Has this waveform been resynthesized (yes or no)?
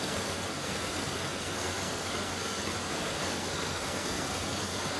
yes